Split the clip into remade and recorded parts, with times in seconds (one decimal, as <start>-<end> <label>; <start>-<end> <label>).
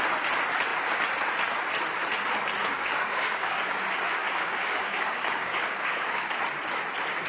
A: 0.0-2.6 recorded; 2.6-3.8 remade; 3.8-4.2 recorded; 4.2-6.4 remade; 6.4-7.3 recorded